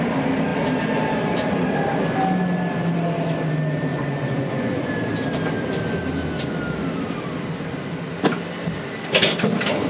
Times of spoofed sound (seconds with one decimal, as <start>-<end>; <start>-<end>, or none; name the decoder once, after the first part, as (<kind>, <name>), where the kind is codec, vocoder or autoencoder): 3.9-4.9 (vocoder, Vocos)